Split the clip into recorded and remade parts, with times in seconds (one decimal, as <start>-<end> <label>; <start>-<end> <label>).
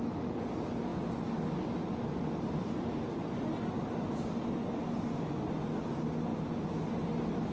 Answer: 0.0-7.5 recorded